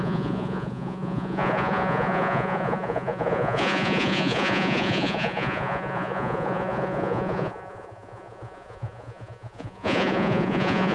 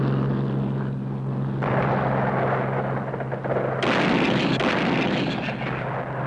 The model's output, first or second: first